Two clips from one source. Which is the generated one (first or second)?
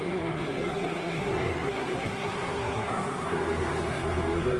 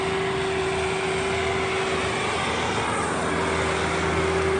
first